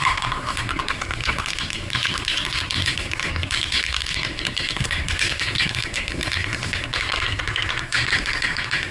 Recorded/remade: remade